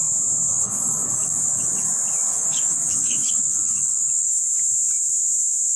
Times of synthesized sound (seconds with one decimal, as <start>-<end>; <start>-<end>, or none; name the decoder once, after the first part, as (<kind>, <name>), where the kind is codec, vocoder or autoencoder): 0.5-1.9 (codec, DAC); 2.3-4.4